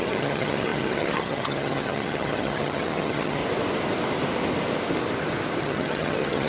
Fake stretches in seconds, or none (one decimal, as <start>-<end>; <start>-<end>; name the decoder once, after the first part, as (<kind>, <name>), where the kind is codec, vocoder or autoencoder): 0.0-3.4 (vocoder, HiFi-GAN); 5.6-6.5